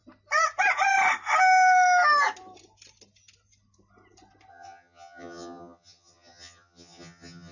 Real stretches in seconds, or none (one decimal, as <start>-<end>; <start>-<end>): 0.0-4.5